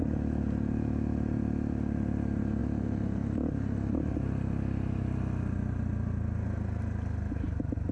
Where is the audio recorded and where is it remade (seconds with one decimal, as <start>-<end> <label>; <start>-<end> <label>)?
0.0-7.9 recorded